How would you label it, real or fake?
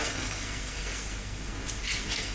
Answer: fake